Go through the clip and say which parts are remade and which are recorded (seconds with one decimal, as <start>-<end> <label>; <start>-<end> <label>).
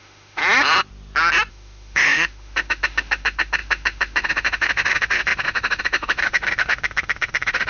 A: 0.0-0.4 remade; 0.4-1.5 recorded; 1.5-7.7 remade